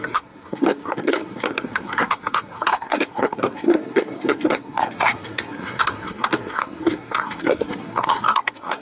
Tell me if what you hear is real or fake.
fake